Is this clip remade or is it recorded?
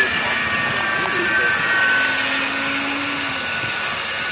recorded